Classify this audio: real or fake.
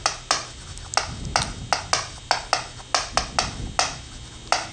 real